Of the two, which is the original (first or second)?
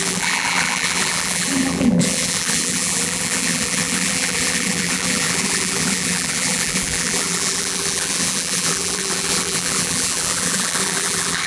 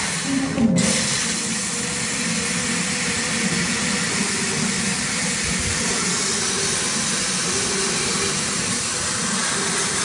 second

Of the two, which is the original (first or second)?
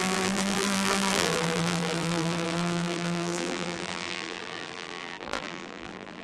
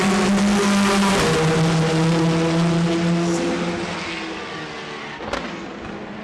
second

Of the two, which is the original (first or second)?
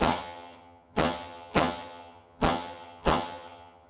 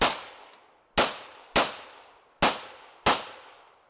second